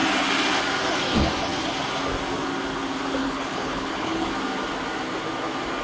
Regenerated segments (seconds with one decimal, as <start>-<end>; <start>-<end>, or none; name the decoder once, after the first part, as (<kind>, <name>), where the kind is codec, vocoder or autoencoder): 3.2-4.3 (codec, HILCodec)